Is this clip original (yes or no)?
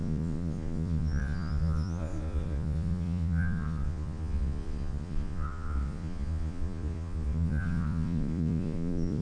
no